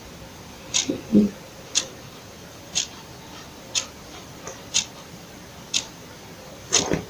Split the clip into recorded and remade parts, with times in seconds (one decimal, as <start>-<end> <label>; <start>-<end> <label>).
0.0-7.1 recorded